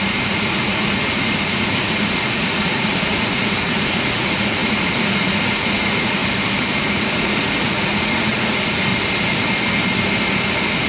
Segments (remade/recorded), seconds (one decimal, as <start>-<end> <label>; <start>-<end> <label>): 0.0-6.2 remade; 6.2-6.8 recorded; 6.8-8.9 remade; 8.9-10.9 recorded

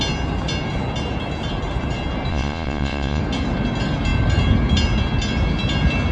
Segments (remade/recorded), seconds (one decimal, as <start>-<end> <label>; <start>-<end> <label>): 0.0-2.3 recorded; 2.3-3.2 remade; 3.2-6.1 recorded

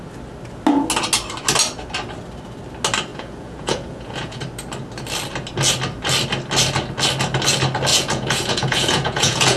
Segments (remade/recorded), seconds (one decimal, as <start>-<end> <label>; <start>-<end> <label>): 0.0-3.1 recorded; 3.1-4.4 remade; 4.4-7.9 recorded; 7.9-9.6 remade

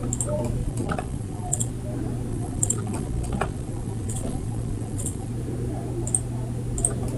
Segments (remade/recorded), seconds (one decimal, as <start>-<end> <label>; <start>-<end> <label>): 0.0-0.6 recorded; 0.6-1.7 remade; 1.7-2.3 recorded; 2.3-5.3 remade; 5.3-7.2 recorded

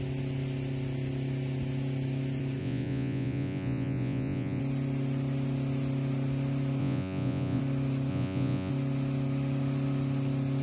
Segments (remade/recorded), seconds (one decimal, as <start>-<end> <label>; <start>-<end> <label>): 0.0-2.6 recorded; 2.6-4.6 remade; 4.6-6.8 recorded; 6.8-7.6 remade; 7.6-8.1 recorded; 8.1-8.7 remade; 8.7-10.6 recorded